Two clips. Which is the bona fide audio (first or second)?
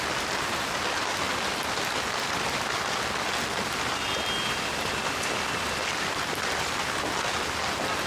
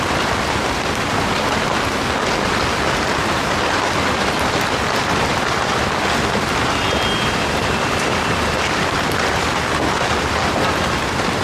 first